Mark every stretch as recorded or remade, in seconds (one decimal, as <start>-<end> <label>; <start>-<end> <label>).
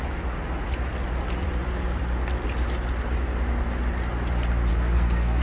0.0-4.7 recorded; 4.7-5.4 remade